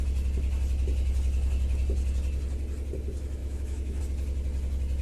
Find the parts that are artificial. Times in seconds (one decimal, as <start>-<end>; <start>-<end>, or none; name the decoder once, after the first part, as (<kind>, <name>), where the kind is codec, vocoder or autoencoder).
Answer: 3.4-4.0 (autoencoder, DAC-VAE)